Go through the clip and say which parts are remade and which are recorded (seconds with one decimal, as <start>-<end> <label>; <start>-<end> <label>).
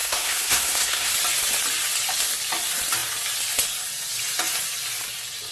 0.0-1.1 remade; 1.1-5.5 recorded